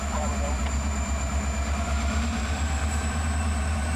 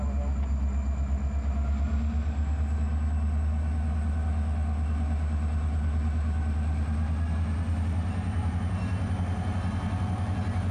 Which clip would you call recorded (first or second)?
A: second